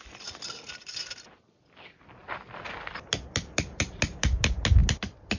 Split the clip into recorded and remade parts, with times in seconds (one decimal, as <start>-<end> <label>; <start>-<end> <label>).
0.0-5.4 recorded